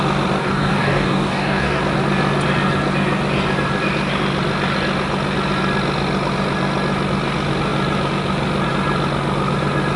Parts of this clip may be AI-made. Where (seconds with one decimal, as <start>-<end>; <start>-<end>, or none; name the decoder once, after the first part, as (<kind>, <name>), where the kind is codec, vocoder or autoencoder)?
0.4-1.8 (codec, DAC)